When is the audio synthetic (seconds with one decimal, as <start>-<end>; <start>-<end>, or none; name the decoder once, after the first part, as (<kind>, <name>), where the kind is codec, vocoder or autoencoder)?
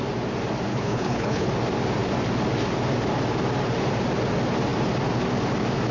0.7-1.5 (codec, HILCodec)